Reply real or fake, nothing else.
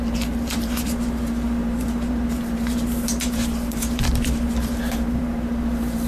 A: fake